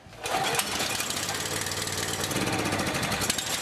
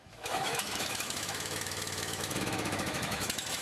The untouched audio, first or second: first